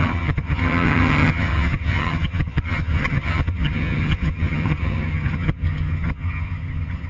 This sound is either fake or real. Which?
fake